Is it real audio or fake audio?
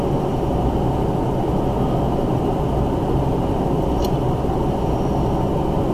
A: real